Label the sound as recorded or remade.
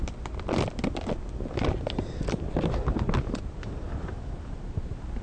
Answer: recorded